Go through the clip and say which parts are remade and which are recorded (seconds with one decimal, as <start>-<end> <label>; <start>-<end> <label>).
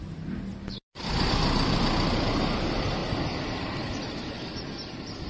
0.0-5.3 remade